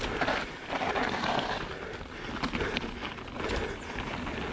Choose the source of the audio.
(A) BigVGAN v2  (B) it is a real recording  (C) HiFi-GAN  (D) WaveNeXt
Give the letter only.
B